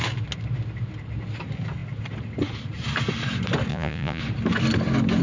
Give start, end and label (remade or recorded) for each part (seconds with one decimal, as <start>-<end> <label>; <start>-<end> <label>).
0.0-3.7 recorded; 3.7-4.2 remade; 4.2-5.2 recorded

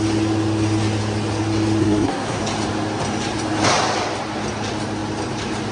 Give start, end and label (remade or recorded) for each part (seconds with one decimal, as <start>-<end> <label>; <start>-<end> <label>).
0.0-1.8 recorded; 1.8-2.4 remade; 2.4-5.7 recorded

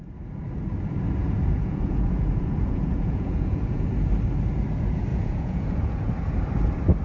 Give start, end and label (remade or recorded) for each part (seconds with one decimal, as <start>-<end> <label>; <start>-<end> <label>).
0.0-1.2 recorded; 1.2-3.9 remade; 3.9-5.1 recorded; 5.1-6.1 remade; 6.1-7.0 recorded

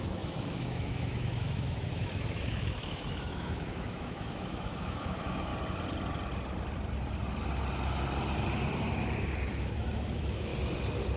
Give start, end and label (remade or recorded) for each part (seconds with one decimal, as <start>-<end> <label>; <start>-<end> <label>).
0.0-5.5 remade; 5.5-9.6 recorded; 9.6-10.5 remade; 10.5-11.2 recorded